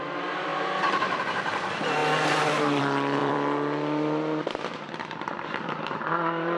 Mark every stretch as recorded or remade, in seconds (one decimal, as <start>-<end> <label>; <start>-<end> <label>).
0.0-3.2 recorded; 3.2-6.6 remade